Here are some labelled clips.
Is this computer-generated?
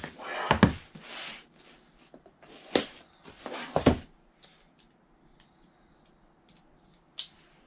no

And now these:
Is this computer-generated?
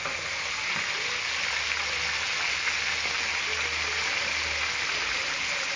no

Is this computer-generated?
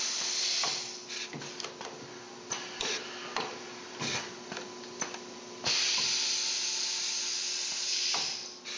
no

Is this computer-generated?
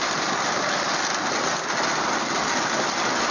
no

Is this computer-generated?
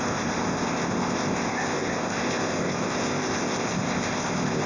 yes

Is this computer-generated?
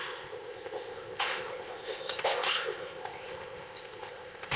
yes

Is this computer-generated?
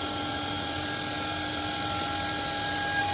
no